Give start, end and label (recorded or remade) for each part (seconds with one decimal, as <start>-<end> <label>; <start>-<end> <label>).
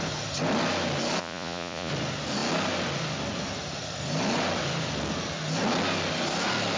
0.0-1.2 recorded; 1.2-1.9 remade; 1.9-6.8 recorded